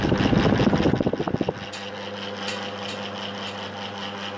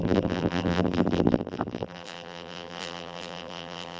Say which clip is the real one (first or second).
first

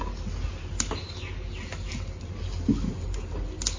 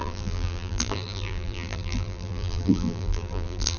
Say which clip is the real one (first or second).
first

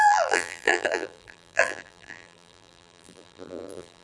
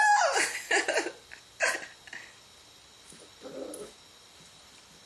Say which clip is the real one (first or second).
second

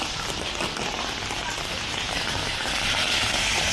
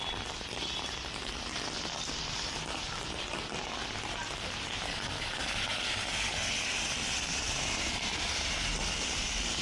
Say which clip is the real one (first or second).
second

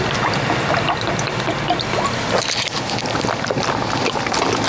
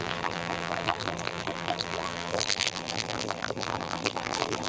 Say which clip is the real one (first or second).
first